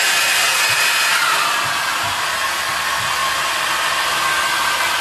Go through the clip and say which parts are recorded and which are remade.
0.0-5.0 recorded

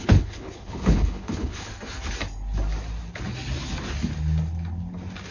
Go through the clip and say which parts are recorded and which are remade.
0.0-1.7 remade; 1.7-5.3 recorded

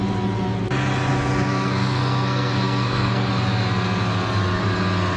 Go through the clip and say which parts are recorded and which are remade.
0.0-1.1 recorded; 1.1-3.3 remade; 3.3-5.2 recorded

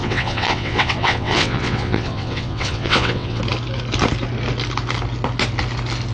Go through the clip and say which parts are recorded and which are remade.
0.0-3.4 remade; 3.4-6.1 recorded

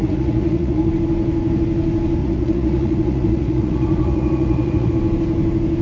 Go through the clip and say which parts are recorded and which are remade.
0.0-0.9 remade; 0.9-2.2 recorded; 2.2-4.9 remade; 4.9-5.8 recorded

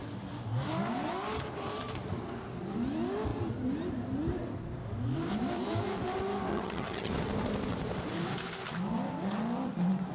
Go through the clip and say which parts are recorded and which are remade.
0.0-6.5 recorded; 6.5-7.1 remade; 7.1-10.1 recorded

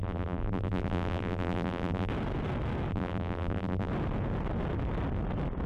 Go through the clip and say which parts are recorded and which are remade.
0.0-2.1 remade; 2.1-2.9 recorded; 2.9-3.9 remade; 3.9-5.7 recorded